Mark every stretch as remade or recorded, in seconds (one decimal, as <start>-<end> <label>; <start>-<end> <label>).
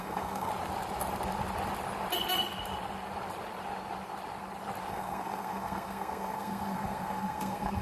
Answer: 0.0-0.5 remade; 0.5-4.9 recorded; 4.9-7.8 remade